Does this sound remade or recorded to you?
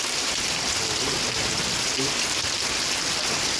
recorded